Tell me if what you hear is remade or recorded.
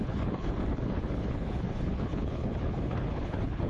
remade